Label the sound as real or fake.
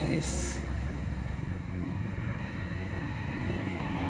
fake